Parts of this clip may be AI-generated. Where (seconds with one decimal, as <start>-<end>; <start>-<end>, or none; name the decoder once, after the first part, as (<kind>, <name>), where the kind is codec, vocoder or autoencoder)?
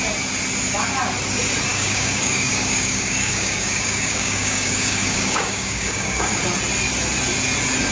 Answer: 1.7-6.4 (codec, DAC)